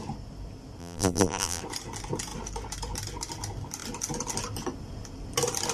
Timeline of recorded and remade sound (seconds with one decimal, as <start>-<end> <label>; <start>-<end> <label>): 0.0-0.8 recorded; 0.8-1.6 remade; 1.6-5.7 recorded

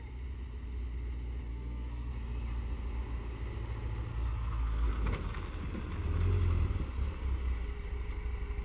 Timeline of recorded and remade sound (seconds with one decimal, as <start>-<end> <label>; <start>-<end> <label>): 0.0-1.5 recorded; 1.5-2.1 remade; 2.1-4.1 recorded; 4.1-4.9 remade; 4.9-8.6 recorded

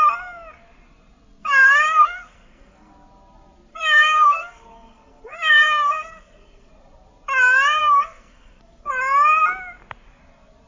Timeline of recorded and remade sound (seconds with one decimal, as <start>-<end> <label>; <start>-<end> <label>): 0.0-1.4 recorded; 1.4-2.9 remade; 2.9-3.7 recorded; 3.7-6.7 remade; 6.7-7.8 recorded; 7.8-8.9 remade; 8.9-10.7 recorded

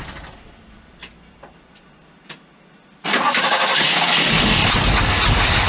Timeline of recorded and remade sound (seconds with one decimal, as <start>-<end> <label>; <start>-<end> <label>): 0.0-5.7 recorded

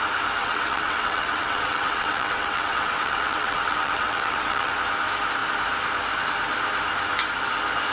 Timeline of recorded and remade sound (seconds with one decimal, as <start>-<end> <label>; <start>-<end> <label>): 0.0-0.4 recorded; 0.4-4.7 remade; 4.7-7.9 recorded

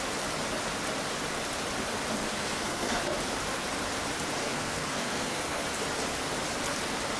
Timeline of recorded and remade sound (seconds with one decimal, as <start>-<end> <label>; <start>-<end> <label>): 0.0-2.2 recorded; 2.2-3.0 remade; 3.0-4.4 recorded; 4.4-5.6 remade; 5.6-7.2 recorded

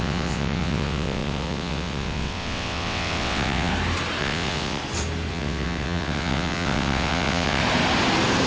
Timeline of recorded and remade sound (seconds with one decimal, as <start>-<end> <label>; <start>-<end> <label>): 0.0-3.7 remade; 3.7-4.2 recorded; 4.2-4.8 remade; 4.8-5.3 recorded; 5.3-7.6 remade; 7.6-8.5 recorded

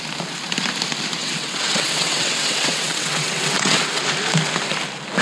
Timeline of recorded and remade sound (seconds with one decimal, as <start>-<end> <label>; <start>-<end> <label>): 0.0-1.2 recorded; 1.2-4.0 remade; 4.0-5.2 recorded